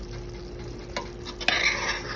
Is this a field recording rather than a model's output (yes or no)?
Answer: yes